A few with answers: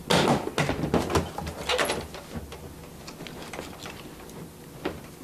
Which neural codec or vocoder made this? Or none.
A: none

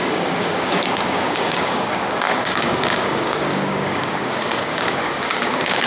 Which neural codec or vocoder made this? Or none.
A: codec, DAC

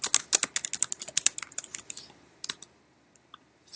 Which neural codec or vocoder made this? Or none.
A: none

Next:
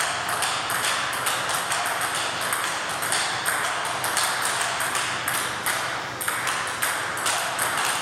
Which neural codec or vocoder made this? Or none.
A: none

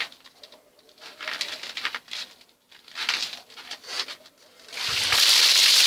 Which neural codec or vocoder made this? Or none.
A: none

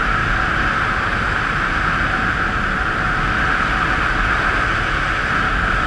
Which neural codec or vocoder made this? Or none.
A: none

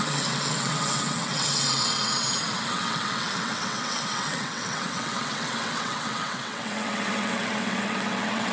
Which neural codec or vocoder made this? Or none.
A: vocoder, WaveNeXt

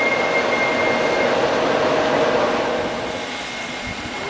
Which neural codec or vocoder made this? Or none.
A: none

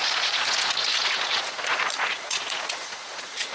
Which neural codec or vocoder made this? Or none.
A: vocoder, Vocos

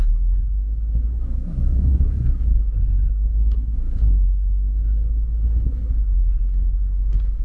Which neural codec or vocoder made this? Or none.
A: codec, SNAC